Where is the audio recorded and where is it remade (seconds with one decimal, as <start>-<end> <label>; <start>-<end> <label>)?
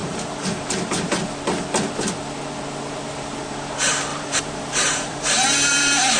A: 0.0-1.2 remade; 1.2-4.1 recorded; 4.1-6.2 remade